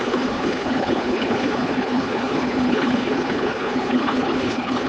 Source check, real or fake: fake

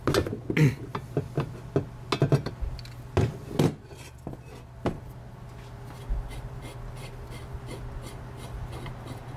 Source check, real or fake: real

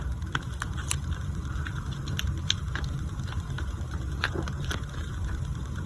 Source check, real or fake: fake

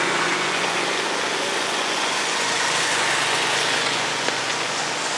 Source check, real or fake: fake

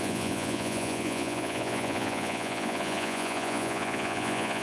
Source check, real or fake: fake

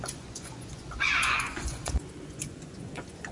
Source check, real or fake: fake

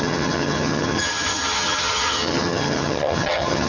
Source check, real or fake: fake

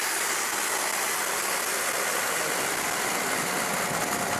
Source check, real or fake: real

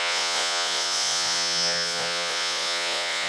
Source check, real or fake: fake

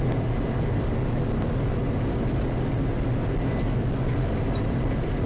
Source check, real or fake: real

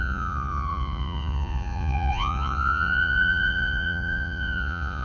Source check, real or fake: fake